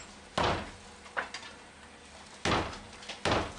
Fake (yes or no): no